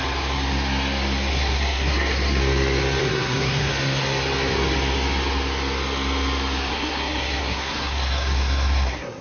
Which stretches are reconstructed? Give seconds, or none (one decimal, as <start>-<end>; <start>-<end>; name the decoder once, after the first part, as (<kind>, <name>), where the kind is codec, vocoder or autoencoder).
1.3-2.4 (codec, SNAC); 3.0-3.7; 6.7-9.2